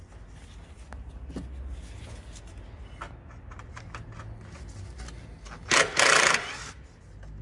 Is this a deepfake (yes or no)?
no